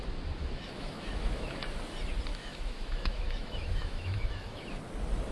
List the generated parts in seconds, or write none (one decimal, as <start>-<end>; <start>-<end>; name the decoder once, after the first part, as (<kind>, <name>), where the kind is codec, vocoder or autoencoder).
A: 0.4-1.6 (autoencoder, DAC-VAE); 2.3-4.8